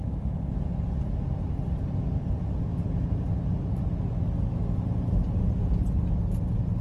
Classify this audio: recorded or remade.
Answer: recorded